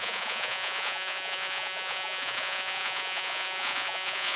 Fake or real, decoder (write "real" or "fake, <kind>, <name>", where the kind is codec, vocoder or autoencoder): fake, vocoder, Vocos